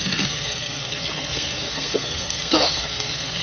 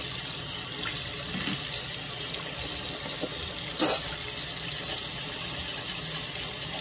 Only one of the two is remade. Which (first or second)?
first